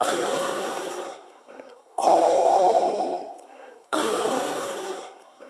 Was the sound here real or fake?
fake